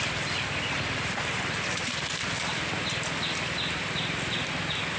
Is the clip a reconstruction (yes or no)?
no